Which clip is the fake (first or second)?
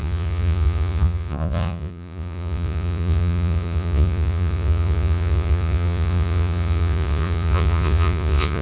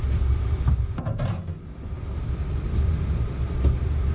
first